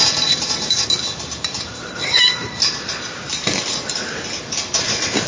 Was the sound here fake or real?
real